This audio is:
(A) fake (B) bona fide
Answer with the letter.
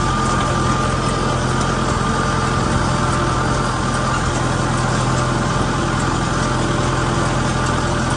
B